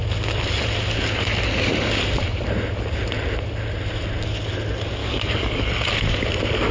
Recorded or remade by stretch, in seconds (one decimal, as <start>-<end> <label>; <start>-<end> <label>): 0.0-5.0 recorded; 5.0-5.6 remade; 5.6-6.7 recorded